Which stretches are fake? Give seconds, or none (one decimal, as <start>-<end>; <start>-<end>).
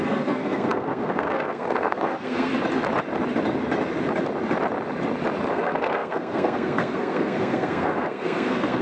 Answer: 0.0-2.5; 5.5-8.8